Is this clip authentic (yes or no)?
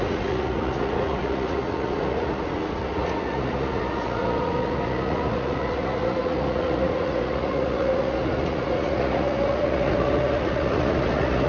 no